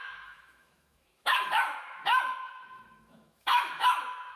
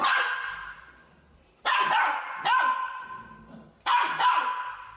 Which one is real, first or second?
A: second